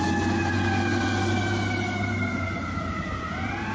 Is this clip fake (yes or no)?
no